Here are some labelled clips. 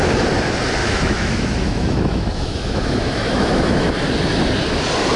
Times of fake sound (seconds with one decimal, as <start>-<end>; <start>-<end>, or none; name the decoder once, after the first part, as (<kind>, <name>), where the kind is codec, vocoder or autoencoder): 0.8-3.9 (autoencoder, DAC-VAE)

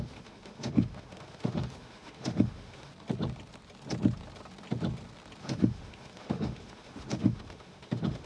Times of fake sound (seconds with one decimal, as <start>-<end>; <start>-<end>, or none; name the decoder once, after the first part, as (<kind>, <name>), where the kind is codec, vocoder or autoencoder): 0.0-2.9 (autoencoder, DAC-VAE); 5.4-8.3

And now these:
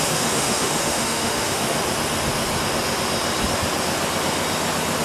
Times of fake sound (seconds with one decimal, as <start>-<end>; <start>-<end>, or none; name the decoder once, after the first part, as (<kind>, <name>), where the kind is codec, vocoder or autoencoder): 0.0-1.8 (autoencoder, DAC-VAE)

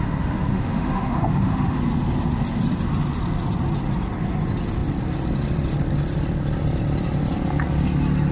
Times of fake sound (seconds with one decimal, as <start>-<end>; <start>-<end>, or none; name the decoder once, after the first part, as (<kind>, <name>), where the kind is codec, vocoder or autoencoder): 0.5-1.8 (autoencoder, DAC-VAE)

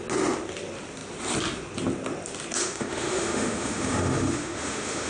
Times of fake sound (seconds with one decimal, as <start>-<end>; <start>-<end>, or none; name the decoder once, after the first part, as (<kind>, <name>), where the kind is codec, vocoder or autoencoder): 2.6-5.1 (autoencoder, DAC-VAE)

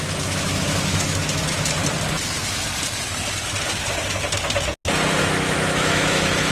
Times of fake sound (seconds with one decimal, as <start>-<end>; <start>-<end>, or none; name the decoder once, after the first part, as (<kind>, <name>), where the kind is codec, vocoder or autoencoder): 0.0-1.8 (autoencoder, DAC-VAE); 5.2-6.5